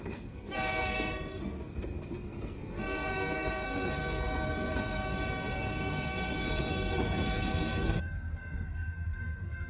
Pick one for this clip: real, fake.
fake